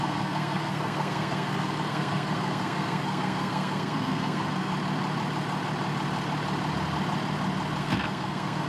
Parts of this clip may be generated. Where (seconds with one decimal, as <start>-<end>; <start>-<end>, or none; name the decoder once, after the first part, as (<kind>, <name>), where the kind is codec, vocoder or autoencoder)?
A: 0.0-4.7 (codec, SNAC); 7.8-8.7